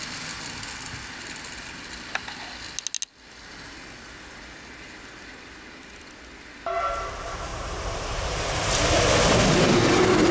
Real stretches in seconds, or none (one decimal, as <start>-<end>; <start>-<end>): 0.0-7.5; 8.4-10.3